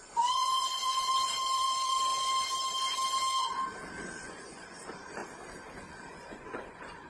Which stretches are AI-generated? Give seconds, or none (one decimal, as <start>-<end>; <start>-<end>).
0.0-2.1; 4.0-5.2; 5.8-7.1